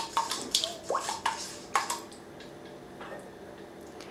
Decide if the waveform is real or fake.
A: real